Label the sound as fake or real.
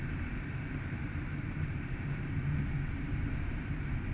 fake